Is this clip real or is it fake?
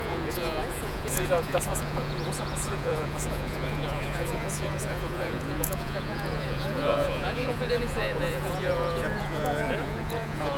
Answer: fake